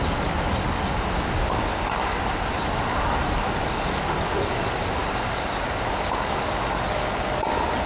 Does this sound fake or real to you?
real